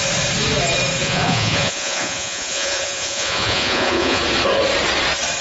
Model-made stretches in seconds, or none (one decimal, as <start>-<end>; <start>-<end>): 1.0-4.2